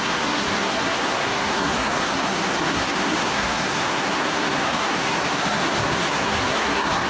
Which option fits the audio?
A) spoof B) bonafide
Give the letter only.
A